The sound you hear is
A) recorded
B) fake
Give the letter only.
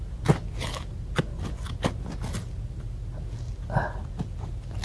A